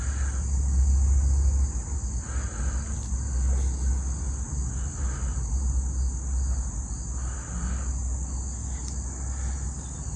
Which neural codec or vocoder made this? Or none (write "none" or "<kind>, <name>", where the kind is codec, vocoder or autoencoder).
none